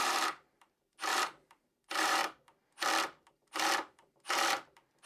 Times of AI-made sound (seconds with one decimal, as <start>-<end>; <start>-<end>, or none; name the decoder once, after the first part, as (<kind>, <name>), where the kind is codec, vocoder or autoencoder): 0.0-2.2 (vocoder, BigVGAN v2); 3.3-5.1